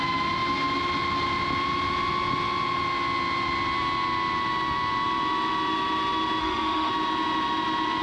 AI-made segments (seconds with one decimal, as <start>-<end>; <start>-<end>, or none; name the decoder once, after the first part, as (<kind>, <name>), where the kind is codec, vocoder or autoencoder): 6.4-6.9 (autoencoder, DAC-VAE)